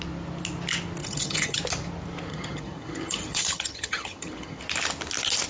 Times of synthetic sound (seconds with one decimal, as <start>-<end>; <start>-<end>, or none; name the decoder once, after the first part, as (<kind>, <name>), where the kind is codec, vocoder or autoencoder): 1.0-1.6 (vocoder, HiFi-GAN); 2.3-4.6